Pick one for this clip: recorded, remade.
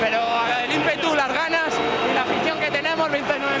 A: recorded